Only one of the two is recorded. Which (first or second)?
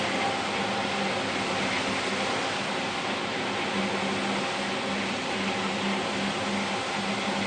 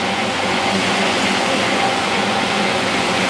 first